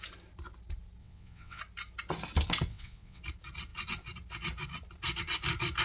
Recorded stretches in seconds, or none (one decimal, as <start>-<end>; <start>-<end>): 0.0-1.0; 1.6-2.7; 3.2-5.8